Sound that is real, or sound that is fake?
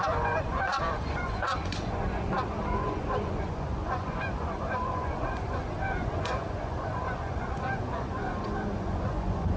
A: fake